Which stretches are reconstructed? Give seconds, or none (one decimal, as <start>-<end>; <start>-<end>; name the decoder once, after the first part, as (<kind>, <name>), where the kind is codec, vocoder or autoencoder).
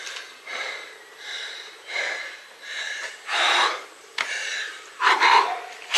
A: 0.5-4.1 (vocoder, BigVGAN v2); 4.5-5.1